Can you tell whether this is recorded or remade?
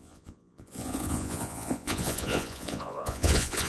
remade